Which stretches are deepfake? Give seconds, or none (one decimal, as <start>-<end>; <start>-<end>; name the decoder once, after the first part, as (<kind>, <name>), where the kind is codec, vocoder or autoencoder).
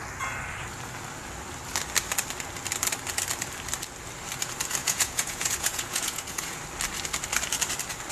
4.8-6.6 (vocoder, Vocos)